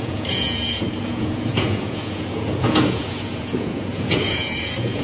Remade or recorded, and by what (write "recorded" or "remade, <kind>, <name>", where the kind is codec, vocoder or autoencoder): remade, vocoder, Vocos